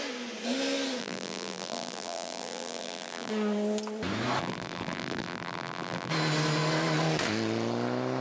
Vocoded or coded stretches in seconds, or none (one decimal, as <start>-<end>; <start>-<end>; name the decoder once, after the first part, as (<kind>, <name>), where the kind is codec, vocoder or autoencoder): 1.0-3.3 (vocoder, BigVGAN v2); 4.4-6.1